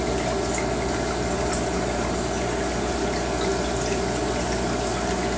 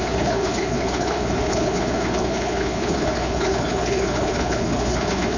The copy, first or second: second